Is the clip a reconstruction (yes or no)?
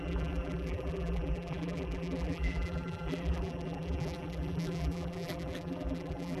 yes